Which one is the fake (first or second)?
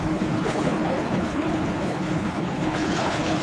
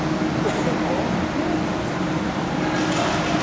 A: first